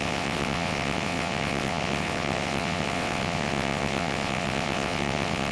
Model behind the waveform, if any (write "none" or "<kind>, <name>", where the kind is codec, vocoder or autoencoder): vocoder, WaveNeXt